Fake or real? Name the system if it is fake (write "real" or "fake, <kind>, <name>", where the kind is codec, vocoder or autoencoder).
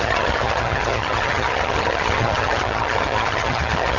fake, vocoder, HiFi-GAN